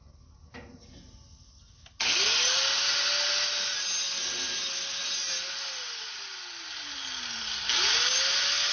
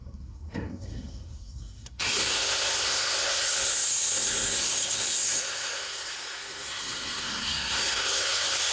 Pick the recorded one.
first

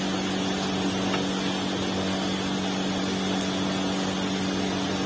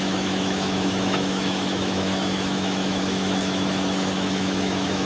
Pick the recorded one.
first